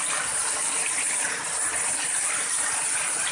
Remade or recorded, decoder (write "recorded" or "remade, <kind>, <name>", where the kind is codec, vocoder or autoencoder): recorded